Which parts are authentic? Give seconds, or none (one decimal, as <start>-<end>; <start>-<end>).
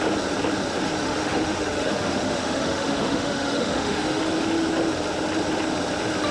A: 0.0-1.0; 4.2-6.3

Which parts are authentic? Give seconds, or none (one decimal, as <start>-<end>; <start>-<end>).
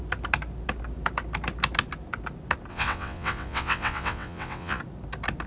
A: 0.0-2.7; 4.8-5.5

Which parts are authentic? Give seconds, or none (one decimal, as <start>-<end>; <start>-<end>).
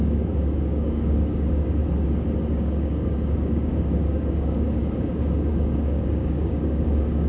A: 1.8-2.5